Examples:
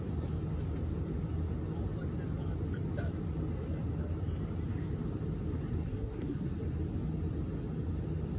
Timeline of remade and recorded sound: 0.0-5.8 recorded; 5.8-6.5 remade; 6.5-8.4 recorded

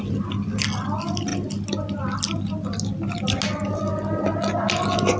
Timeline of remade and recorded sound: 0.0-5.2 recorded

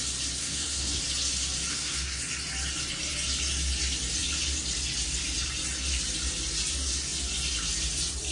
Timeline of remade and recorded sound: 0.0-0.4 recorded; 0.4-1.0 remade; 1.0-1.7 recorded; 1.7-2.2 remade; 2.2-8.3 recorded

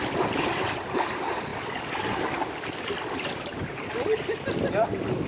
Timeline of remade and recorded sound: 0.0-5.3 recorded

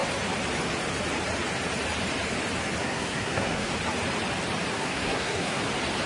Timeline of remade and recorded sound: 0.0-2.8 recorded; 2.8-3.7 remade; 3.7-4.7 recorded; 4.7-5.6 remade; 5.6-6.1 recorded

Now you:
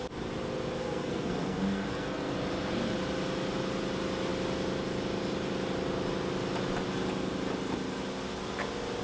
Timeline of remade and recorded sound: 0.0-0.8 recorded; 0.8-2.3 remade; 2.3-9.0 recorded

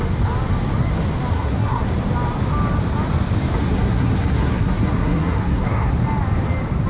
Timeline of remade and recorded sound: 0.0-1.3 recorded; 1.3-1.9 remade; 1.9-3.6 recorded; 3.6-5.9 remade; 5.9-6.9 recorded